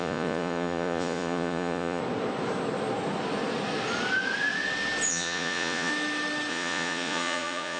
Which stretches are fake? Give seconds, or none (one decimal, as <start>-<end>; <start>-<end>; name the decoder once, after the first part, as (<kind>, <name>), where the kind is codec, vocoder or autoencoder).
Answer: 0.0-2.0 (vocoder, Vocos); 5.1-5.9; 6.5-7.8